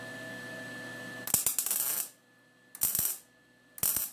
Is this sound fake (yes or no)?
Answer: no